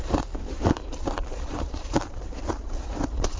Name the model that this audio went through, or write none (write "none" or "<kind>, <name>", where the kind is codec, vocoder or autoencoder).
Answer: vocoder, BigVGAN v2